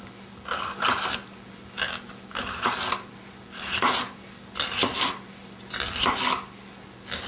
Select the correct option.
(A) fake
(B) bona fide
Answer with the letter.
B